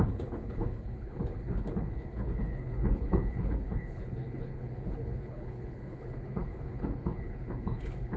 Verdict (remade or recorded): remade